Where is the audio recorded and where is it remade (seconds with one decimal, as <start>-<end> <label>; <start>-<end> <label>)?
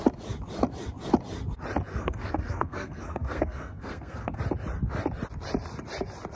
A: 0.0-1.9 recorded; 1.9-4.4 remade; 4.4-6.4 recorded